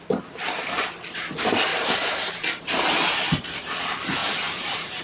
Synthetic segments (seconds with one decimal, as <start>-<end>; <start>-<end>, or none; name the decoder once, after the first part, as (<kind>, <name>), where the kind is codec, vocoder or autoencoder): 1.7-2.8 (vocoder, BigVGAN v2); 4.2-5.0